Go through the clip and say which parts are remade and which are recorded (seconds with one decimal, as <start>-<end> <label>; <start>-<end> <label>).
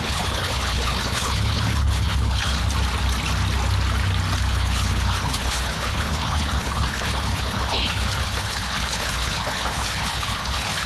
0.0-2.6 remade; 2.6-4.5 recorded; 4.5-10.9 remade